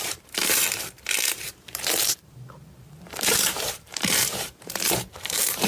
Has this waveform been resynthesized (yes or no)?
yes